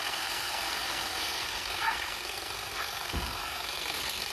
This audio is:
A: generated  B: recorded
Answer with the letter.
A